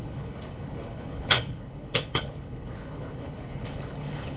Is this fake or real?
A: fake